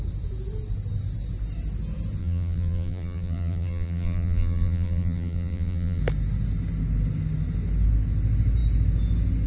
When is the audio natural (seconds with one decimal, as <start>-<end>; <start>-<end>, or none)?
0.0-2.2; 6.0-9.5